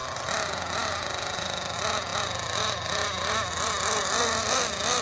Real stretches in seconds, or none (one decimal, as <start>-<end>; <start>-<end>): 0.0-5.0